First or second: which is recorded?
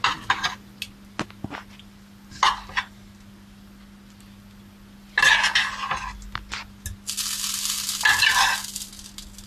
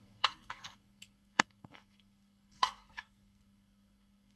first